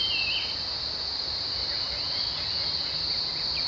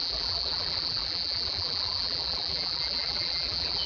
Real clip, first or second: first